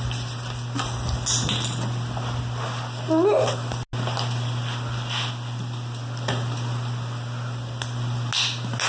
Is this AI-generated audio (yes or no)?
no